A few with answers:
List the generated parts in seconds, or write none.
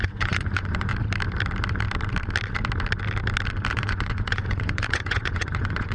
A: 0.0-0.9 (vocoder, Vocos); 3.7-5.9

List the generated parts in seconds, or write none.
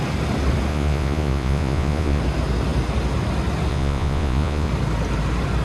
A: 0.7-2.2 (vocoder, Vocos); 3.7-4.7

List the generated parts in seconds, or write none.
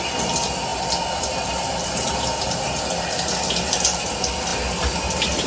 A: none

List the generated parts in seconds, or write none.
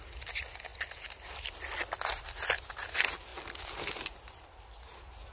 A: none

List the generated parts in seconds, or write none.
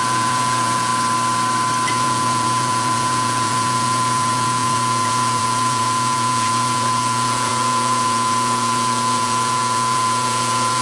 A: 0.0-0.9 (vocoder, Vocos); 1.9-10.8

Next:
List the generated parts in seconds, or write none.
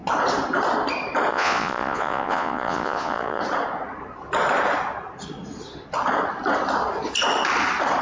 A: 1.3-3.4 (vocoder, Vocos)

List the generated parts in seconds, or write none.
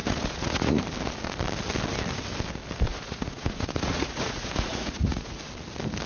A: 0.0-0.8 (vocoder, Vocos); 2.9-5.4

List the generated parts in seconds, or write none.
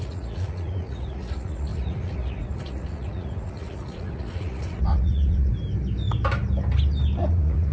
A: 0.0-5.5 (vocoder, Vocos); 7.3-7.7